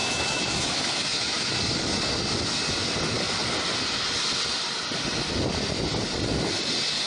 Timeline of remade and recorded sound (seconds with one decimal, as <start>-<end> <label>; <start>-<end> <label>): 0.0-1.5 remade; 1.5-7.1 recorded